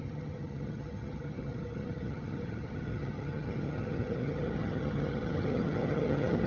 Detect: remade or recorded remade